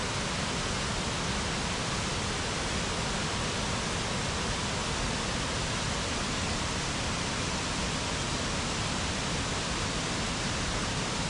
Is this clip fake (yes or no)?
no